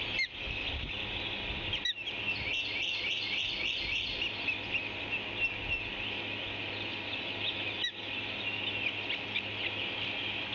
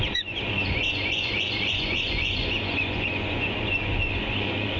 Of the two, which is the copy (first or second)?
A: second